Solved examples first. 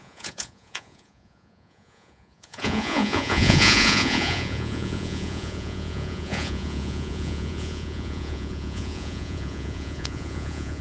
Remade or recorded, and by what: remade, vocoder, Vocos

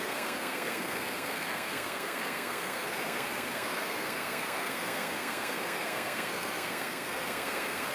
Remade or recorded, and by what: remade, codec, SNAC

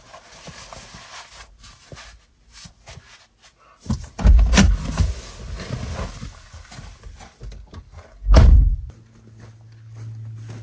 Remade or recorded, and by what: recorded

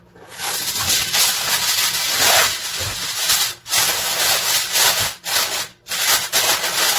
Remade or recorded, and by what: recorded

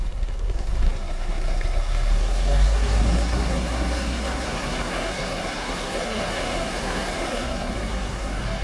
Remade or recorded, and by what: remade, codec, SNAC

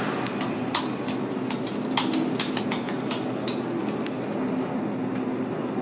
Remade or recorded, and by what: recorded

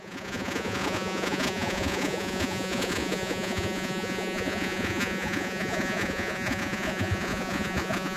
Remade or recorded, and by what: remade, vocoder, Vocos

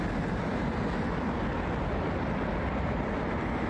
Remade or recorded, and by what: recorded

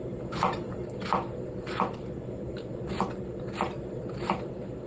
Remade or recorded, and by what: recorded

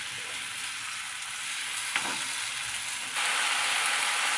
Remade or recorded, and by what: recorded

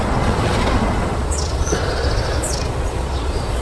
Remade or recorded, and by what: remade, vocoder, Vocos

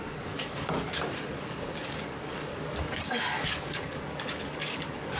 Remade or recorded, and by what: remade, codec, DAC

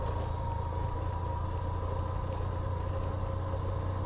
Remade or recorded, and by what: recorded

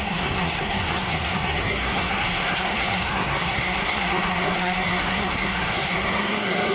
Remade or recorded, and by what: remade, codec, SNAC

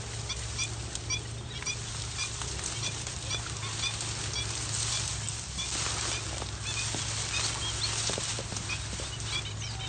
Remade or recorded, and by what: recorded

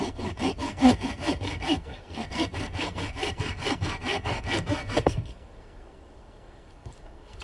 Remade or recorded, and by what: remade, codec, SNAC